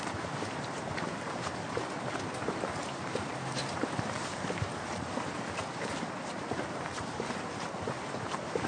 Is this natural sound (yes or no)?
no